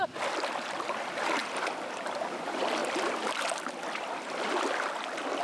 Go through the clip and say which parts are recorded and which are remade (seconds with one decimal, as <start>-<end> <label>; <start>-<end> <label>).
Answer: 0.0-1.4 recorded; 1.4-2.4 remade; 2.4-2.8 recorded; 2.8-4.9 remade; 4.9-5.4 recorded